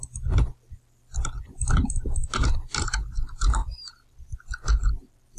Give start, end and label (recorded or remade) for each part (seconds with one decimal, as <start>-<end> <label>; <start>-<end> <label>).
0.0-5.4 recorded

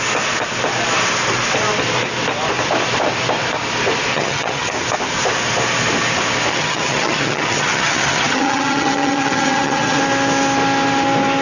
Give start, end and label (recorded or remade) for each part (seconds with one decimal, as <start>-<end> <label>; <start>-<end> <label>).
0.0-4.1 recorded; 4.1-4.7 remade; 4.7-6.5 recorded; 6.5-10.0 remade; 10.0-11.4 recorded

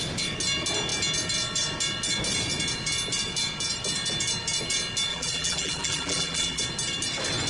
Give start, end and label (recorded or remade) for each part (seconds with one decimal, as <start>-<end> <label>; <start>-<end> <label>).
0.0-5.1 recorded; 5.1-6.6 remade; 6.6-7.5 recorded